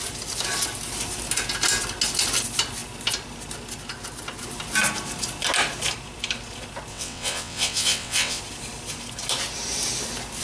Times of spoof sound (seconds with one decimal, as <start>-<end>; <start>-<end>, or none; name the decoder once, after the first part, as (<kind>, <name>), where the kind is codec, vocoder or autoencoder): 6.9-8.4 (vocoder, WaveNeXt)